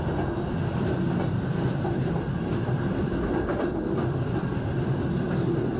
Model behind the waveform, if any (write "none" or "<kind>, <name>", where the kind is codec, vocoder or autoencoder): vocoder, BigVGAN v2